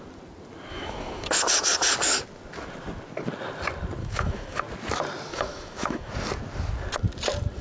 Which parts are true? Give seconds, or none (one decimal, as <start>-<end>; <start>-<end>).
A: 0.0-0.7; 1.3-4.0; 4.6-5.3; 6.1-7.6